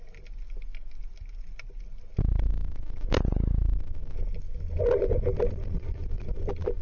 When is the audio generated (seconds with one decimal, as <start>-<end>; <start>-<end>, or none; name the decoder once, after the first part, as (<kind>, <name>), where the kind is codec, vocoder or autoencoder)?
none

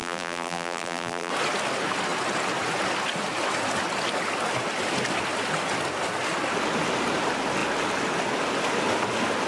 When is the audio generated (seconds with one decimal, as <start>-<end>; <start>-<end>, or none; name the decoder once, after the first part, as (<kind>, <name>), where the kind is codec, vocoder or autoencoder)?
0.0-1.3 (vocoder, BigVGAN v2)

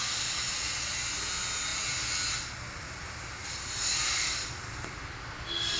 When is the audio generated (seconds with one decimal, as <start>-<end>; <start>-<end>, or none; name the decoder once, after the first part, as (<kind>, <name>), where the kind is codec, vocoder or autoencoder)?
3.4-4.3 (vocoder, BigVGAN v2)